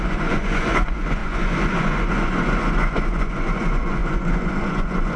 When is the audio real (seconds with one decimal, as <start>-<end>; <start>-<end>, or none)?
none